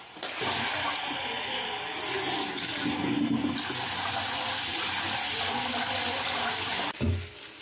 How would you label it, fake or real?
real